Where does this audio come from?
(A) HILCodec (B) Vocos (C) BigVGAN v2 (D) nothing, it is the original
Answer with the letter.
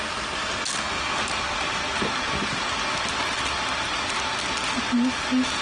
D